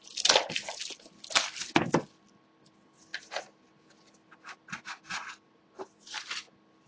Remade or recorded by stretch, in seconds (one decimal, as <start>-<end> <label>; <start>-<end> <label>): 0.0-6.9 recorded